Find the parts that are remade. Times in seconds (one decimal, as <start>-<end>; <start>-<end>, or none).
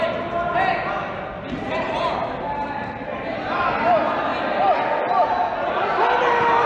none